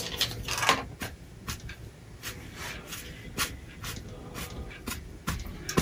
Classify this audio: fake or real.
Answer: real